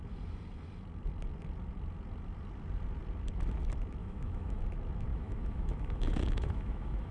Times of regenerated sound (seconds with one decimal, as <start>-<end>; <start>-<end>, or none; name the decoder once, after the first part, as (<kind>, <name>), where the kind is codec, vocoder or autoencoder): 4.0-4.6 (autoencoder, DAC-VAE); 5.1-7.1